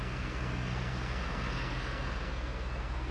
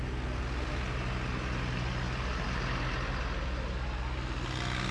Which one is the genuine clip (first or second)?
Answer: second